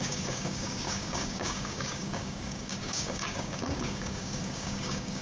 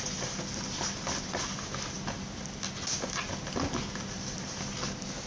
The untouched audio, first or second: second